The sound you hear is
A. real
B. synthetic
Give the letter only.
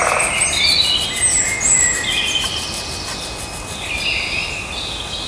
A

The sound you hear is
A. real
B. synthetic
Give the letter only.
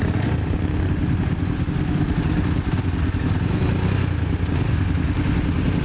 A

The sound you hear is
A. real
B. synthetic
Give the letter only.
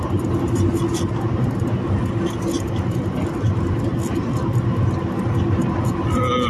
A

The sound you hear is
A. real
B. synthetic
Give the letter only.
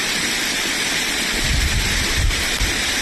B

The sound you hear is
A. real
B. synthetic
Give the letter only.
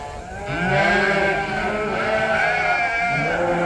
A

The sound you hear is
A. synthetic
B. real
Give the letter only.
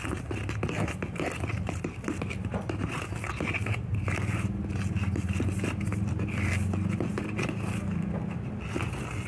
B